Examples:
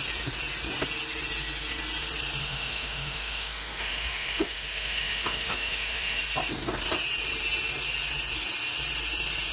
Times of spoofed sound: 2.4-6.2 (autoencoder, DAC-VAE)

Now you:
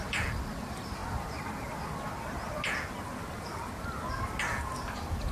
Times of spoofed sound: none

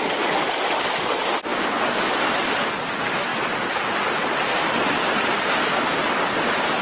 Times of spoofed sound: none